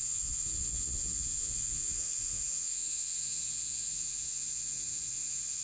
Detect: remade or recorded remade